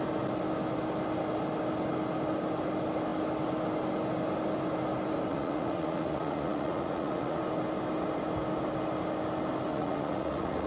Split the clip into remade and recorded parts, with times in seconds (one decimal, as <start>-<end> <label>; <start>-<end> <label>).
0.0-5.3 recorded; 5.3-7.4 remade; 7.4-9.7 recorded; 9.7-10.7 remade